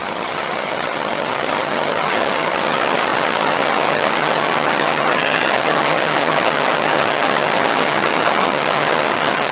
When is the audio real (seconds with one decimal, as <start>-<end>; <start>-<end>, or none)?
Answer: none

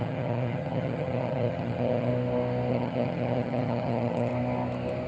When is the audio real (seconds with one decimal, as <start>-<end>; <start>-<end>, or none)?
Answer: 2.1-2.7; 4.3-5.1